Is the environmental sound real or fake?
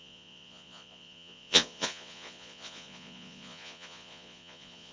fake